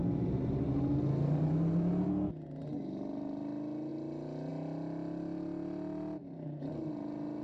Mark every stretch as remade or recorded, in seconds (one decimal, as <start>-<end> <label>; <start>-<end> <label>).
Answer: 0.0-7.4 recorded

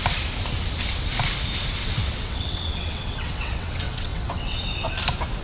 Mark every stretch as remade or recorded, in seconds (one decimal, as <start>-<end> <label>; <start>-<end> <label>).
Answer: 0.0-1.8 recorded; 1.8-4.9 remade; 4.9-5.4 recorded

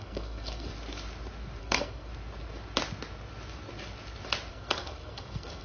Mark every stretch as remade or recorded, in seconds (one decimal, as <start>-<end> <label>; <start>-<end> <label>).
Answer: 0.0-0.7 remade; 0.7-1.6 recorded; 1.6-2.1 remade; 2.1-4.5 recorded; 4.5-5.6 remade

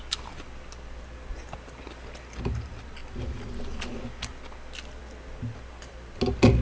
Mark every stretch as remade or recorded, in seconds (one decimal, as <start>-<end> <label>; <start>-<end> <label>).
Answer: 0.0-6.6 recorded